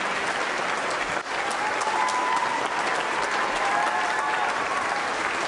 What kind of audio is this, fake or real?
real